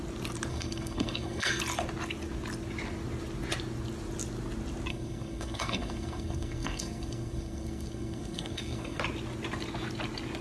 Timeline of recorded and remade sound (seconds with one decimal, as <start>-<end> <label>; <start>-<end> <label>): 0.0-0.5 recorded; 0.5-1.6 remade; 1.6-4.9 recorded; 4.9-9.0 remade; 9.0-10.4 recorded